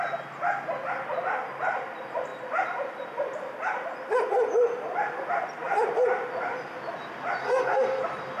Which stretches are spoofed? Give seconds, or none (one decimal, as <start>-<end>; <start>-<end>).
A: 7.4-8.0